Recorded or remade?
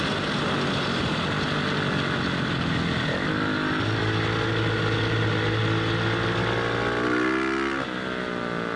recorded